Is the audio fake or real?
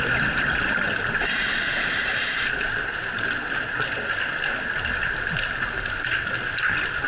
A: real